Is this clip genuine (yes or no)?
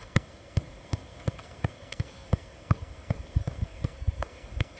no